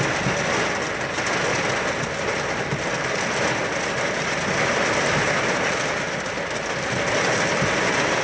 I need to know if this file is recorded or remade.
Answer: recorded